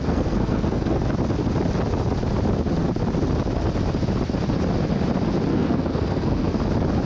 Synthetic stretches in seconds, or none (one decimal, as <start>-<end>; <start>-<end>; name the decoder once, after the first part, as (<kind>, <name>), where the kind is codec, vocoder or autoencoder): 0.0-1.0 (codec, SNAC); 5.5-6.6